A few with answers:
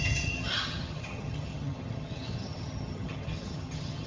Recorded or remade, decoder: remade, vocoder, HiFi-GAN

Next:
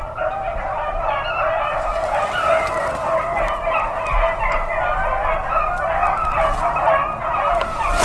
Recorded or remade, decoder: recorded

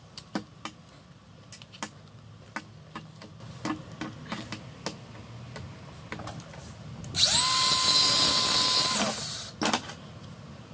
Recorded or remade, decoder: recorded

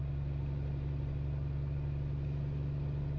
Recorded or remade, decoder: recorded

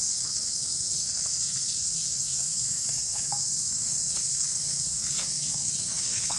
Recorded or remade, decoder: remade, codec, SNAC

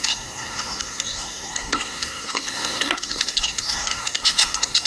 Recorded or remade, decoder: remade, codec, SNAC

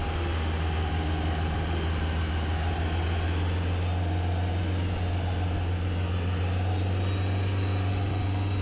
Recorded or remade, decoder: recorded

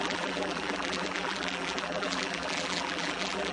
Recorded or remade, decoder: remade, vocoder, BigVGAN v2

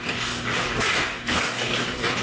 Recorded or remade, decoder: remade, codec, DAC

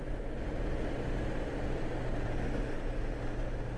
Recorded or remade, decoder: recorded